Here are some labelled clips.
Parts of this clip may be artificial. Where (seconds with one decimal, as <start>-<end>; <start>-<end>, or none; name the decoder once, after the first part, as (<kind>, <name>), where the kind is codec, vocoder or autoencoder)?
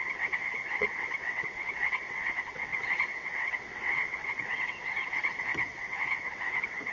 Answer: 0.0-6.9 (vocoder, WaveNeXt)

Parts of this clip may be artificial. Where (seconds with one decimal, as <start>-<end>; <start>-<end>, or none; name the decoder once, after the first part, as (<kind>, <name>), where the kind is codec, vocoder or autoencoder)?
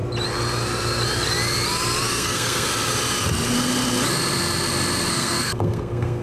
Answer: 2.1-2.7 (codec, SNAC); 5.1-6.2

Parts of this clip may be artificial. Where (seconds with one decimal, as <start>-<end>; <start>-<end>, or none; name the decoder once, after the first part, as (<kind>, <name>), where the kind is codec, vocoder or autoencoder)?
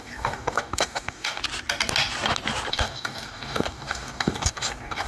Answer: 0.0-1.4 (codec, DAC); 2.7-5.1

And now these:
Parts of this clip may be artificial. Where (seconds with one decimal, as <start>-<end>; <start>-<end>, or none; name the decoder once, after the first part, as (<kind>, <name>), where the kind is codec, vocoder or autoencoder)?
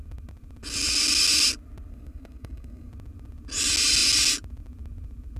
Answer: 1.9-2.9 (codec, SNAC)